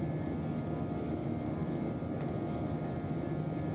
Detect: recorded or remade recorded